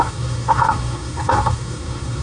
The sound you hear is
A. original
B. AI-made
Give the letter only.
B